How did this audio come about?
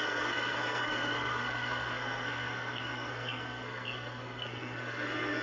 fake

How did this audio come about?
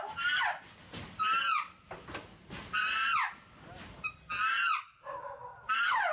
real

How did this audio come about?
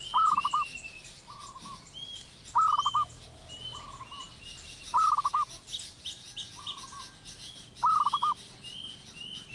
real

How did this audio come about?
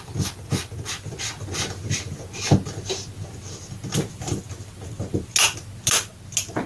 real